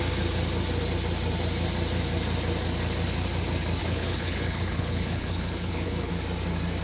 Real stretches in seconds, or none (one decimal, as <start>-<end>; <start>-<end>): 0.0-3.8; 6.1-6.8

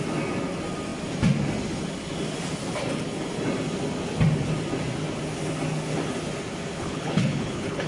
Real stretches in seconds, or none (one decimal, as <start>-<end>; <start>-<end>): 0.0-6.7

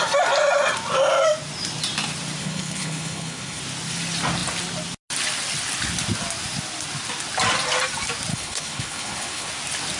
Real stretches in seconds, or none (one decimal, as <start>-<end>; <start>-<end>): 0.0-2.4; 3.6-8.3; 9.5-10.0